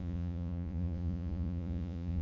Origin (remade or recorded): remade